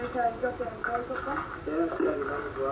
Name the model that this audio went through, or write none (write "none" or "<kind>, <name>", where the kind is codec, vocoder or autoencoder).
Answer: none